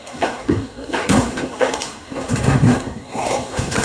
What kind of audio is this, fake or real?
fake